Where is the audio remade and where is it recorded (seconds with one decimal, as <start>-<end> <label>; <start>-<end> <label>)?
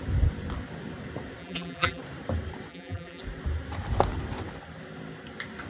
0.0-1.4 recorded; 1.4-2.0 remade; 2.0-2.7 recorded; 2.7-3.2 remade; 3.2-5.7 recorded